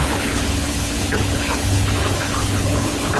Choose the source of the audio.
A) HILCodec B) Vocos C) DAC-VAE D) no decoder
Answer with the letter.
A